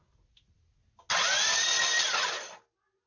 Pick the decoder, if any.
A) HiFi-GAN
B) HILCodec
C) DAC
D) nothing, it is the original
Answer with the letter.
D